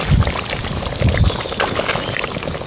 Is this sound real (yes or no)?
yes